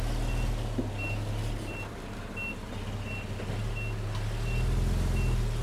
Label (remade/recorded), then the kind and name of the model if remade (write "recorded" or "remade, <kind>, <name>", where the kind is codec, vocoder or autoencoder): recorded